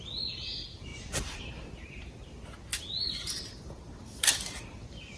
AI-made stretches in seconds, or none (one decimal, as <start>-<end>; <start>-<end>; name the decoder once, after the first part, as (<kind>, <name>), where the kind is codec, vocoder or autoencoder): 0.0-5.2 (vocoder, BigVGAN v2)